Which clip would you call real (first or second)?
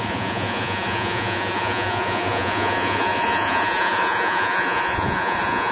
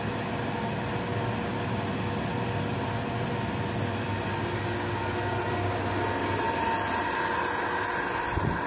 second